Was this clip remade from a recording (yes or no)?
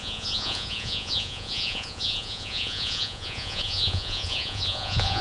yes